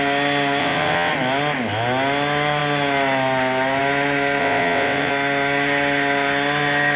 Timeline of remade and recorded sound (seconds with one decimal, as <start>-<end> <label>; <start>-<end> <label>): 0.0-0.6 recorded; 0.6-1.1 remade; 1.1-4.4 recorded; 4.4-5.1 remade; 5.1-7.0 recorded